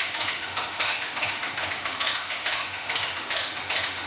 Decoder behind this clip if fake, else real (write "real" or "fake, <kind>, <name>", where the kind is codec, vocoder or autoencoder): fake, autoencoder, DAC-VAE